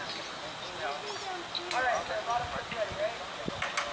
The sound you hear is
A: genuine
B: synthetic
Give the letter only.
A